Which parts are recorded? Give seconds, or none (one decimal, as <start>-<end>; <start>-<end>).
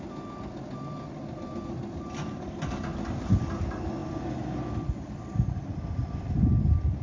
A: 0.0-7.0